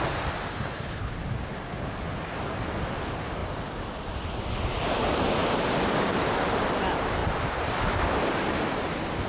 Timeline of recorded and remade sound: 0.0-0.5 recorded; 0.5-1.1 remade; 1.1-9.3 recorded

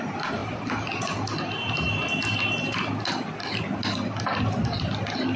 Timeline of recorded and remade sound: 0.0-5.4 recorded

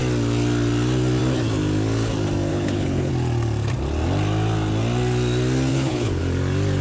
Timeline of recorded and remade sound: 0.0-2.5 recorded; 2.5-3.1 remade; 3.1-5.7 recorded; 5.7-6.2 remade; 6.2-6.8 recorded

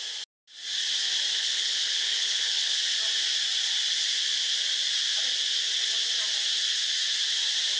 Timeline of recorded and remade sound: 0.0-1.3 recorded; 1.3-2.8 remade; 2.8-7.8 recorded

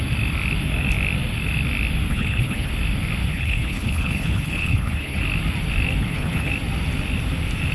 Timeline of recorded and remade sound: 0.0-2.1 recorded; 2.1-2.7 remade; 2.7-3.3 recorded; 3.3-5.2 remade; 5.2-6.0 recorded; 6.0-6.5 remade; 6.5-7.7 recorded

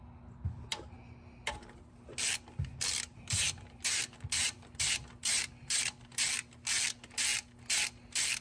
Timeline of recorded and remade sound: 0.0-8.4 recorded

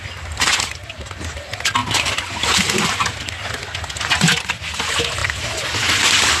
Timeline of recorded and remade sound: 0.0-6.4 recorded

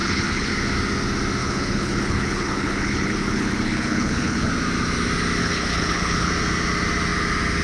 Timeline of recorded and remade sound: 0.0-0.5 remade; 0.5-1.4 recorded; 1.4-4.5 remade; 4.5-5.4 recorded; 5.4-6.3 remade; 6.3-7.6 recorded